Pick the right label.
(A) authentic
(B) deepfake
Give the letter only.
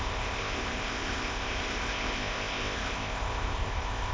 B